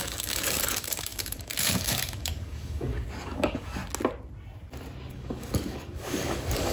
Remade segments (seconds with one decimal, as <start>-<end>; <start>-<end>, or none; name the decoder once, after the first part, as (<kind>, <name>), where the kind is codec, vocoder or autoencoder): 0.0-3.8 (codec, DAC); 5.1-6.7